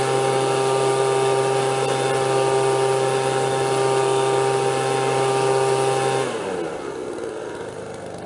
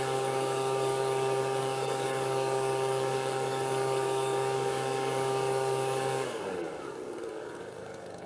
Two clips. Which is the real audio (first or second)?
first